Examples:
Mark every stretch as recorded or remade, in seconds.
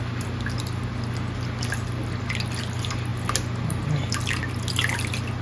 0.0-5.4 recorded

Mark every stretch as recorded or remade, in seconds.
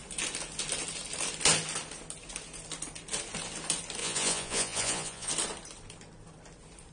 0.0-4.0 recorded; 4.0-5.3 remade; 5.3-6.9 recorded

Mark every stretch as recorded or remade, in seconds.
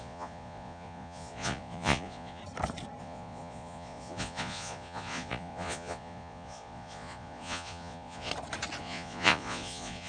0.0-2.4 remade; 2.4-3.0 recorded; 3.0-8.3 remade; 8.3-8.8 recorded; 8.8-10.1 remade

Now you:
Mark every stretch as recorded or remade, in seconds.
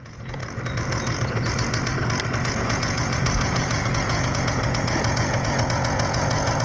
0.0-0.4 remade; 0.4-2.5 recorded; 2.5-6.6 remade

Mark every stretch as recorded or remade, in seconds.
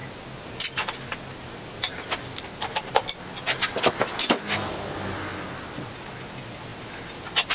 0.0-7.5 recorded